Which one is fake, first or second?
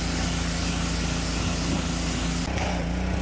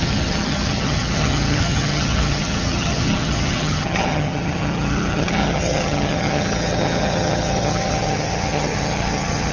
second